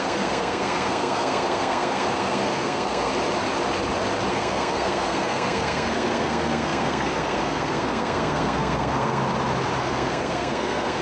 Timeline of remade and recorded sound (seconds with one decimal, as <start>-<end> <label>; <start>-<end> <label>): 0.0-3.1 remade; 3.1-4.3 recorded; 4.3-9.2 remade; 9.2-9.8 recorded; 9.8-11.0 remade